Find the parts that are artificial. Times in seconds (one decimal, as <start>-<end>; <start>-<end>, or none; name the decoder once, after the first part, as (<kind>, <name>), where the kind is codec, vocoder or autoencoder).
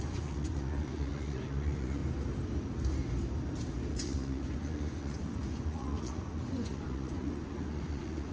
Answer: 0.0-2.0 (vocoder, Vocos); 3.9-8.3